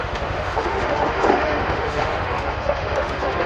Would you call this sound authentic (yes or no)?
no